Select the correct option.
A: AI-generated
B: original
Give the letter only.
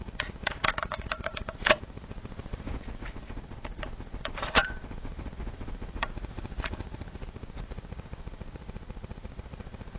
A